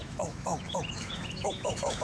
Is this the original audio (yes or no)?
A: no